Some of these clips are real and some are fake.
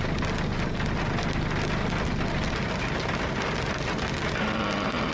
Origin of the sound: real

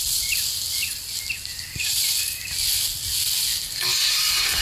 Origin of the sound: real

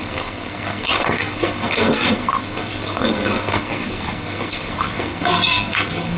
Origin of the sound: fake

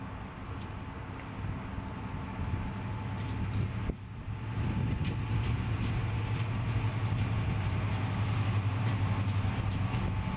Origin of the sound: real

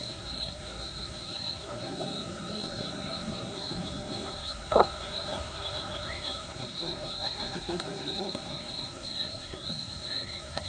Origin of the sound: fake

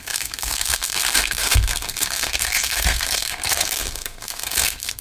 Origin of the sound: fake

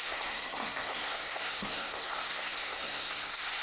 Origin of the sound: fake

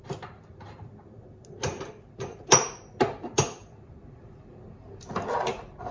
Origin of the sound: real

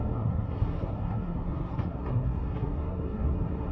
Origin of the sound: fake